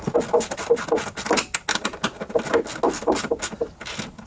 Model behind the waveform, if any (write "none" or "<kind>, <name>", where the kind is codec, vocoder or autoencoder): none